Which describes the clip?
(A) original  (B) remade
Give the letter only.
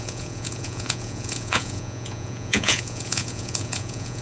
B